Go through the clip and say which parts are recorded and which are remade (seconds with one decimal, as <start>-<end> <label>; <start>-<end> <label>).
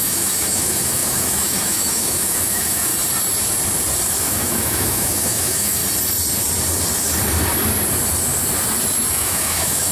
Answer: 0.0-2.9 remade; 2.9-4.2 recorded; 4.2-5.8 remade; 5.8-9.1 recorded; 9.1-9.9 remade